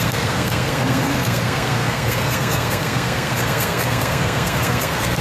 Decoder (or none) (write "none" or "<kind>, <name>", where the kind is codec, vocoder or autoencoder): codec, SNAC